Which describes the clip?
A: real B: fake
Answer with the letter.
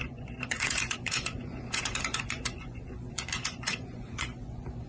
B